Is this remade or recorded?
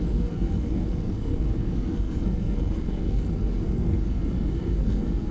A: remade